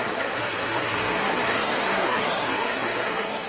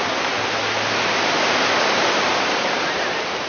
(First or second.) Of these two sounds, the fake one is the first